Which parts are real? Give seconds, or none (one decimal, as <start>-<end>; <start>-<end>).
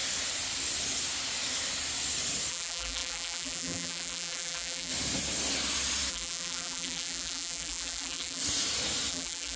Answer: 0.0-2.5; 4.9-6.1; 8.4-9.1